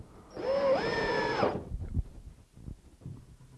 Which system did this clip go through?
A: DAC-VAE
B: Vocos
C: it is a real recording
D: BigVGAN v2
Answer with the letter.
C